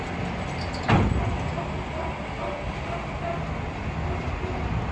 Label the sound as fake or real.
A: real